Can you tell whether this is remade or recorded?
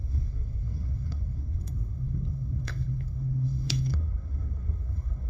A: remade